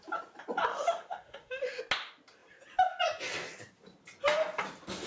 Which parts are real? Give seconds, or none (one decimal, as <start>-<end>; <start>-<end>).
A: 0.0-0.7; 1.8-5.1